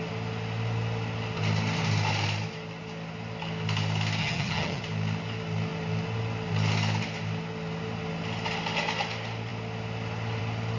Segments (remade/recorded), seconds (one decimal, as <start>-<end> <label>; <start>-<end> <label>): 0.0-4.2 recorded; 4.2-4.8 remade; 4.8-10.8 recorded